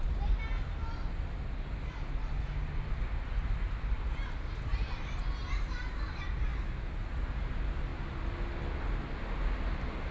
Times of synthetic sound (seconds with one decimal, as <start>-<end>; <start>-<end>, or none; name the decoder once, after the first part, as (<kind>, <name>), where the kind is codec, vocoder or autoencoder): none

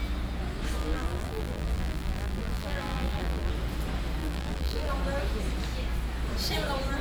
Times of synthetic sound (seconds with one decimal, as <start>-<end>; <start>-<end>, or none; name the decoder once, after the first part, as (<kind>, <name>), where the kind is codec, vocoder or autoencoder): 0.8-3.5 (vocoder, BigVGAN v2); 4.2-4.9

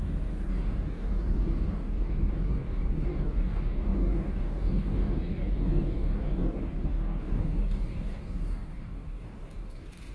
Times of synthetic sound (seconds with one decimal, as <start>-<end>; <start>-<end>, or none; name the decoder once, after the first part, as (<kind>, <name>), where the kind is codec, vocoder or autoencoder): 0.0-10.1 (codec, DAC)

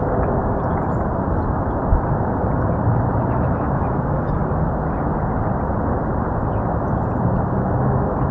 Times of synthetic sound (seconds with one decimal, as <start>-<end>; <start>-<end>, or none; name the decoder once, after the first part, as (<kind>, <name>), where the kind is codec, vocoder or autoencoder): 3.2-4.4 (autoencoder, DAC-VAE)

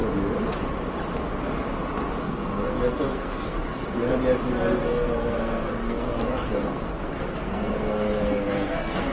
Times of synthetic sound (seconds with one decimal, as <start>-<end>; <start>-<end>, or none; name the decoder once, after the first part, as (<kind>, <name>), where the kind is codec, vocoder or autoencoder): 2.2-4.1 (codec, SNAC); 4.8-9.1